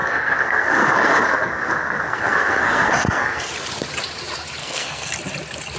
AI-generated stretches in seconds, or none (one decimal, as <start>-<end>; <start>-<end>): 0.0-3.5; 4.6-5.1